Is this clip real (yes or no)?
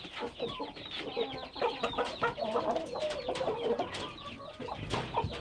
yes